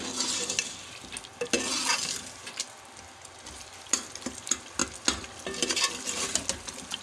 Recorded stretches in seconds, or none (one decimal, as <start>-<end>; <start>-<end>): 0.0-7.0